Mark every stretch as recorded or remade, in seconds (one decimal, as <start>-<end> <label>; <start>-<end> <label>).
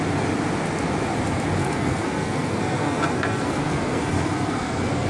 0.0-1.6 recorded; 1.6-5.1 remade